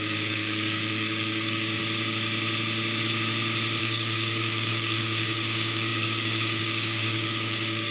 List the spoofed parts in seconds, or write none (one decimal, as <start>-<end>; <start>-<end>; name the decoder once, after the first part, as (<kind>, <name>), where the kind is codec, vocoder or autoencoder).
0.0-1.8 (codec, DAC); 3.8-7.9